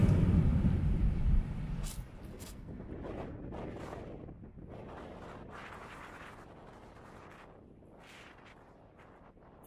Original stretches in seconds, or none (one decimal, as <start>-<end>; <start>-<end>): 0.0-2.3; 2.9-9.7